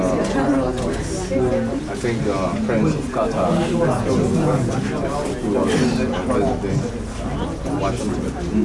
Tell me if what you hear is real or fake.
real